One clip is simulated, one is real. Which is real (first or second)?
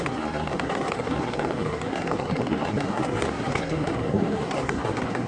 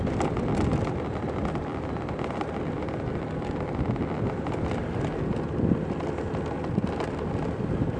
second